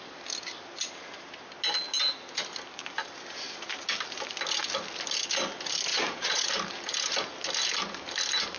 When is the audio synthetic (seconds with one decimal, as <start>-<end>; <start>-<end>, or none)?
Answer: 5.9-6.5